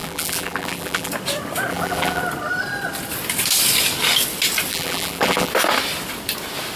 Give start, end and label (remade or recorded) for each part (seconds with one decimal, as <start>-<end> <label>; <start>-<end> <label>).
0.0-1.1 remade; 1.1-1.7 recorded; 1.7-2.2 remade; 2.2-4.7 recorded; 4.7-5.5 remade; 5.5-6.8 recorded